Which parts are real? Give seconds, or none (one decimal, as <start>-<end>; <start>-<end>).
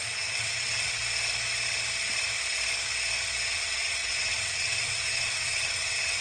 1.0-3.5